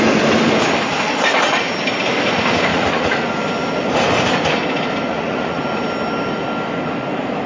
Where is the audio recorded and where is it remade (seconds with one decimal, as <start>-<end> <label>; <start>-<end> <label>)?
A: 0.0-2.7 recorded; 2.7-3.3 remade; 3.3-5.1 recorded; 5.1-5.6 remade; 5.6-7.5 recorded